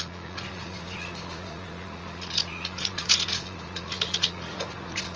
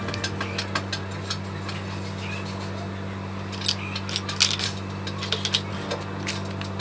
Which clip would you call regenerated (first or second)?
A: first